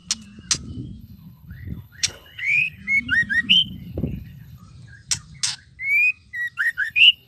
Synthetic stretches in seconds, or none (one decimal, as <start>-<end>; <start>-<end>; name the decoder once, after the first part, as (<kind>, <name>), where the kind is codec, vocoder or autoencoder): 1.0-2.8 (codec, HILCodec); 3.5-4.6; 6.6-7.3